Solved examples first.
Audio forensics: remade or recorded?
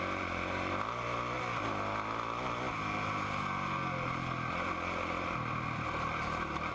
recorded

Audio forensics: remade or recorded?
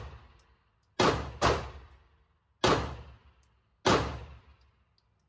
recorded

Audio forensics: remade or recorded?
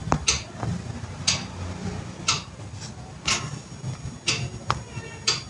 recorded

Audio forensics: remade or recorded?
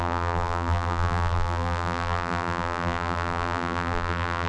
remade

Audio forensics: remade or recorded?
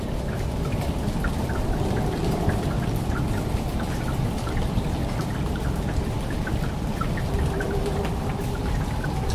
recorded